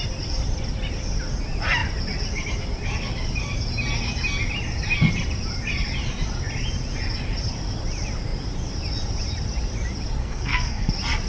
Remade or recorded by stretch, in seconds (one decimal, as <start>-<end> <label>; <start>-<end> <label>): 0.0-10.2 recorded; 10.2-10.9 remade; 10.9-11.3 recorded